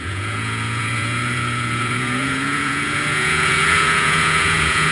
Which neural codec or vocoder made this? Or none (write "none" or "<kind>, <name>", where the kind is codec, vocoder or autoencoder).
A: vocoder, Vocos